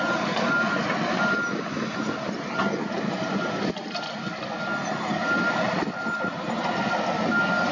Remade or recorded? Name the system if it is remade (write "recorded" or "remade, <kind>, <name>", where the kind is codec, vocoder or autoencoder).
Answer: recorded